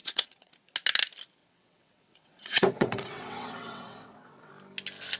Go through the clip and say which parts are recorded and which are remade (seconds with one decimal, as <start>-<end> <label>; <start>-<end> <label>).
0.0-0.5 remade; 0.5-1.4 recorded; 1.4-4.5 remade; 4.5-5.2 recorded